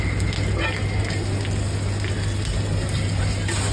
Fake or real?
real